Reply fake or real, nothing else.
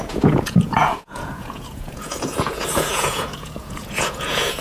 fake